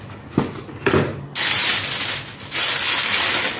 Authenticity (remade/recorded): recorded